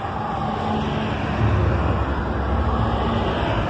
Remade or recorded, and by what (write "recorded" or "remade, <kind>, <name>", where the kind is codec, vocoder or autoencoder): recorded